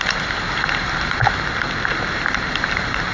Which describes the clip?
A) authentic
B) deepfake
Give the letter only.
A